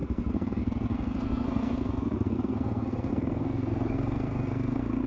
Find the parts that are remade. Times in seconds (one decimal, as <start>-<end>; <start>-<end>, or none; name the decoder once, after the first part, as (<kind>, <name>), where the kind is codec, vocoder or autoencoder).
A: 0.0-5.1 (codec, SNAC)